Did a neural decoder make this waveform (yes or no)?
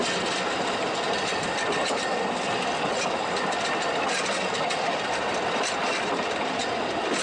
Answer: no